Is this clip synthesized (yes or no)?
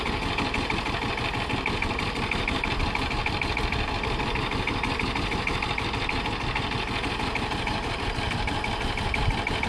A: no